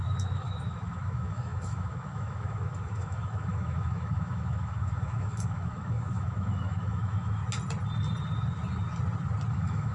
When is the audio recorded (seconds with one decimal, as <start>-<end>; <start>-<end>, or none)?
7.4-9.5